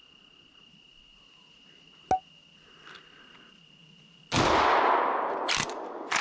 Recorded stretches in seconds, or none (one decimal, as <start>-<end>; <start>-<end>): 0.0-6.2